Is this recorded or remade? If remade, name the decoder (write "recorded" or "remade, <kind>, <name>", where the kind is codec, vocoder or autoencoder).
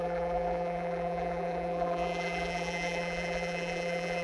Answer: remade, vocoder, BigVGAN v2